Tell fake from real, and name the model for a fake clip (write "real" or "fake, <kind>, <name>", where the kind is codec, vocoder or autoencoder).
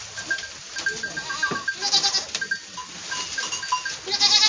real